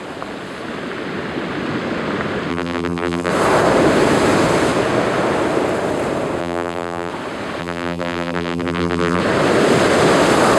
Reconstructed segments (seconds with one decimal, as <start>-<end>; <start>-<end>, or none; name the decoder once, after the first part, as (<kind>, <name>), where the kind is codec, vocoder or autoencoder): 2.5-3.3 (vocoder, BigVGAN v2); 6.4-7.1; 7.6-9.2